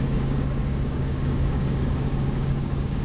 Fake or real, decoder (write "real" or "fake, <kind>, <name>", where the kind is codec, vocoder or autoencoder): fake, codec, DAC